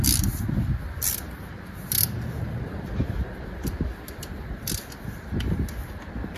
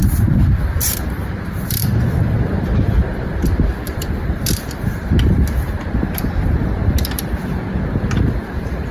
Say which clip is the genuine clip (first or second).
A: first